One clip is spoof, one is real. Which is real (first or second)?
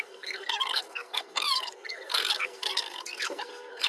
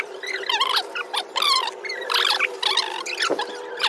second